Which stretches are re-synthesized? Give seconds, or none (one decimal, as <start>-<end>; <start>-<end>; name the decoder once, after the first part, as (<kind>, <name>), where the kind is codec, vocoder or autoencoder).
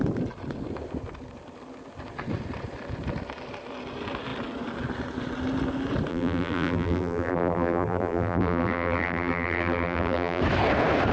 6.1-10.4 (vocoder, BigVGAN v2)